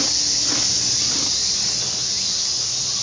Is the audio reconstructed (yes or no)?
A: no